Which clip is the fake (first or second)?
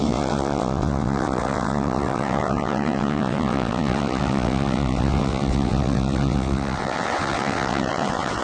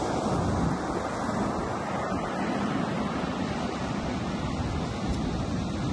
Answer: first